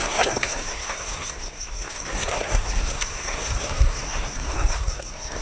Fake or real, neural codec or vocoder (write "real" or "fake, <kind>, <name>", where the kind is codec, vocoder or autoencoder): fake, codec, SNAC